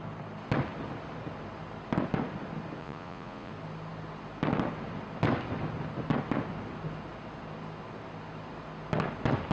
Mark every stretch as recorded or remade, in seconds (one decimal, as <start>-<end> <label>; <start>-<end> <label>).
0.0-2.8 recorded; 2.8-3.5 remade; 3.5-9.5 recorded

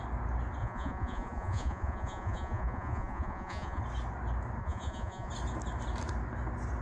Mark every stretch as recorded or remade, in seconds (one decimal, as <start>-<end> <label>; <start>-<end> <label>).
0.0-0.6 recorded; 0.6-3.8 remade; 3.8-4.6 recorded; 4.6-5.3 remade; 5.3-6.8 recorded

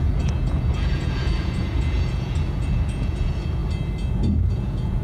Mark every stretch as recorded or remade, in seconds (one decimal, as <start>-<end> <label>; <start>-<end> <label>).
0.0-3.6 remade; 3.6-4.1 recorded; 4.1-5.0 remade

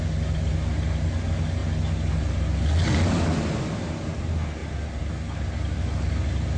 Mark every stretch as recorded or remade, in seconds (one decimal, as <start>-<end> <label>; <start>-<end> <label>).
0.0-6.6 recorded